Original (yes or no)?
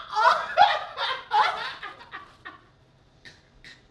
yes